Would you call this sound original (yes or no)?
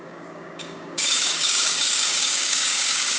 no